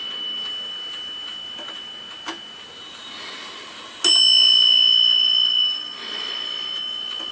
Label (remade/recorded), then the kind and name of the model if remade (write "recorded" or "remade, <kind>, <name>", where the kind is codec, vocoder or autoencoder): recorded